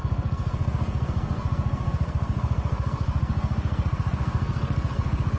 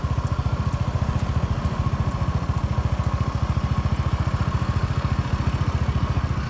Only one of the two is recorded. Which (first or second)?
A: second